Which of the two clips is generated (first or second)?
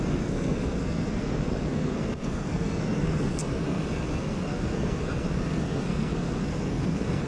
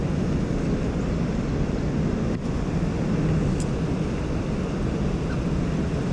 first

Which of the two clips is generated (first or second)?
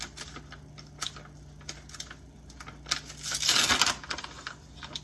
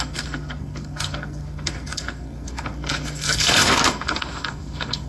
second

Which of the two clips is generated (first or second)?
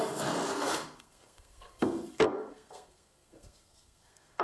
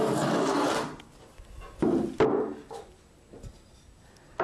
first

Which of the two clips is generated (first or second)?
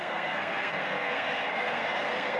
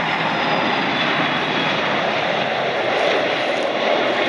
first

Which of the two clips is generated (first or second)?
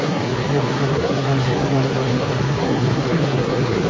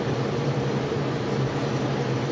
first